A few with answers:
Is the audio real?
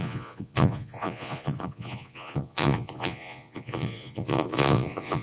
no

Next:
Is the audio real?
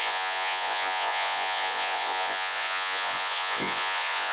no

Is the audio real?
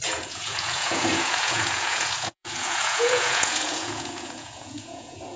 no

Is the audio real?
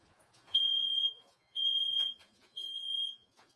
no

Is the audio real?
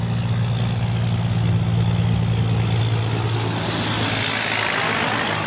yes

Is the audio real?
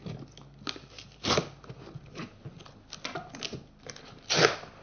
yes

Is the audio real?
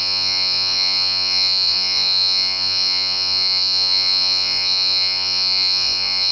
no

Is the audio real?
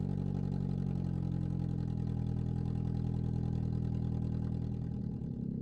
yes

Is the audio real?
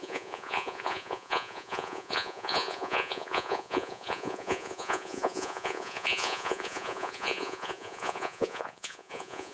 no